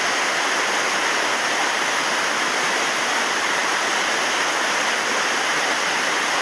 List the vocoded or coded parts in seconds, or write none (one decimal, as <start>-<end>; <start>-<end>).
none

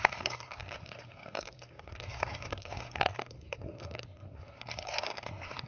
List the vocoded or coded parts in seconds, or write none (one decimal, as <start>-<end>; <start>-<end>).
0.0-5.7

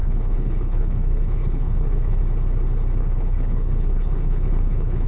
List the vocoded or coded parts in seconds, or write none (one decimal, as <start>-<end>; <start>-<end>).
0.0-2.2; 3.0-5.1

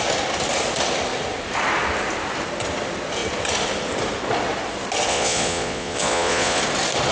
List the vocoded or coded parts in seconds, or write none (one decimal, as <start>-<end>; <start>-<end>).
5.1-6.6